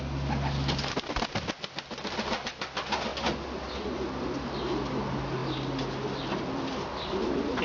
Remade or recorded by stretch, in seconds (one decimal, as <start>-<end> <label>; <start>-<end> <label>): 0.0-7.6 recorded